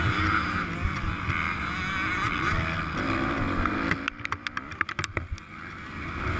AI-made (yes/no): no